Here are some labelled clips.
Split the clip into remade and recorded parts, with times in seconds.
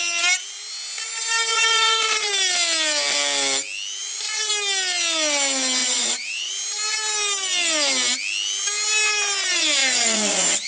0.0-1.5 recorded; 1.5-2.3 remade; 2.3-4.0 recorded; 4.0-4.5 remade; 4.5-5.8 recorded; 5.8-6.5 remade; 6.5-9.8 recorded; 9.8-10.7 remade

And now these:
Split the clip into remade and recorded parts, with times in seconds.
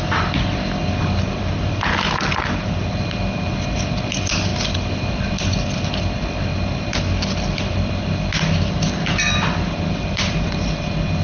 0.0-11.2 recorded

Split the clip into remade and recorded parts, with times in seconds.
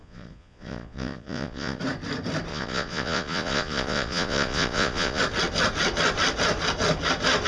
0.0-1.8 remade; 1.8-2.5 recorded; 2.5-5.2 remade; 5.2-7.5 recorded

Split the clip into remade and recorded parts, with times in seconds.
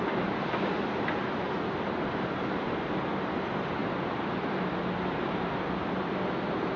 0.0-3.8 recorded; 3.8-4.6 remade; 4.6-6.8 recorded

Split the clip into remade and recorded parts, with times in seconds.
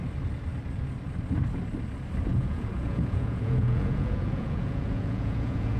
0.0-2.3 recorded; 2.3-5.8 remade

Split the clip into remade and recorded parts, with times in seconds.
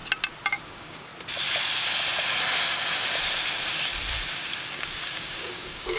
0.0-0.6 recorded; 0.6-1.1 remade; 1.1-4.7 recorded; 4.7-6.0 remade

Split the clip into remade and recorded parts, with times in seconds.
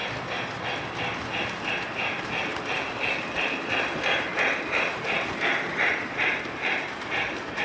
0.0-1.7 recorded; 1.7-7.6 remade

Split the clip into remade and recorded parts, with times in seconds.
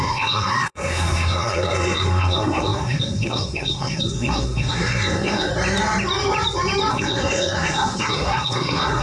0.0-5.5 remade; 5.5-6.9 recorded; 6.9-9.0 remade